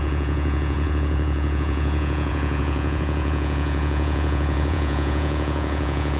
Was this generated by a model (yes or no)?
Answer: yes